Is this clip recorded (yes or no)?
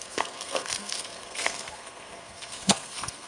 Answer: no